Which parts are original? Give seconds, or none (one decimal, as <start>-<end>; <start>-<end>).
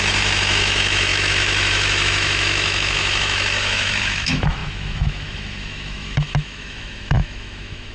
none